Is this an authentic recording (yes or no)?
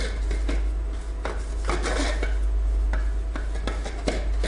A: yes